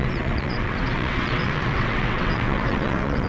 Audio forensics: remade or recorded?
remade